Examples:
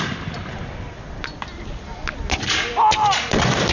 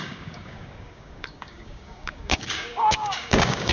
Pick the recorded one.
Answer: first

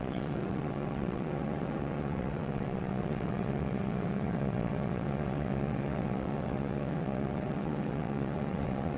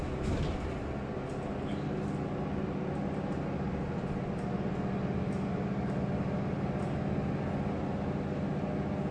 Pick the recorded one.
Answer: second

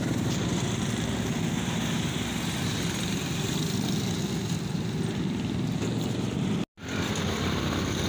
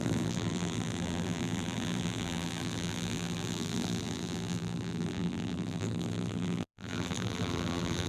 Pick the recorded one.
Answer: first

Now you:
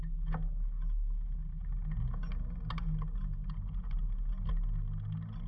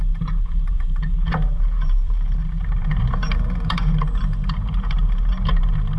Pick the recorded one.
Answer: first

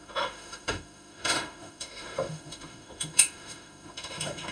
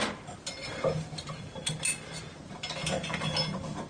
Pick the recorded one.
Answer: second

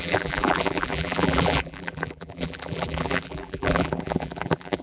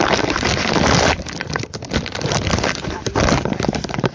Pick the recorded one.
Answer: second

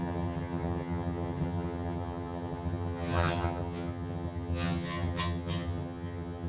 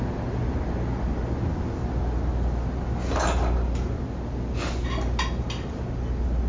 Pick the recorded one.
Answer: second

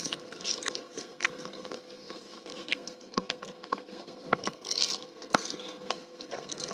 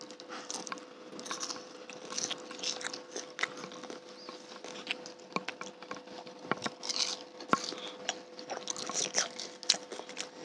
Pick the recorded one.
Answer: second